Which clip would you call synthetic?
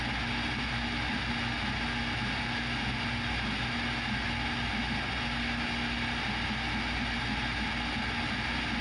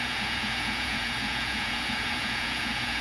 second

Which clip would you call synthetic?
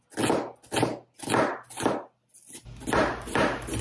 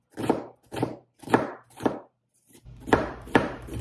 second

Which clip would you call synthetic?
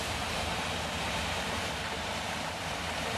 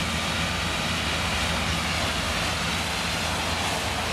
first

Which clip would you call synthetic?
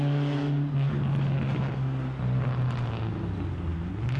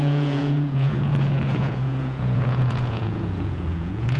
second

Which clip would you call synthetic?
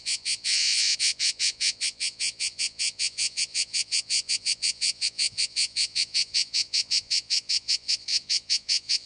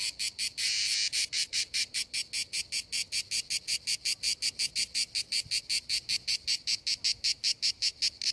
first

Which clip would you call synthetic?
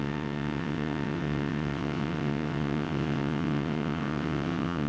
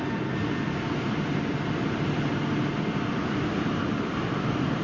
first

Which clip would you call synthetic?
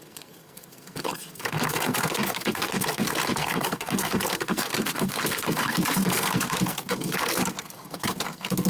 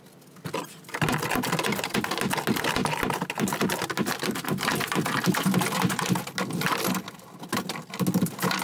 first